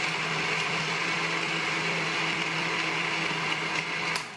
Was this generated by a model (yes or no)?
no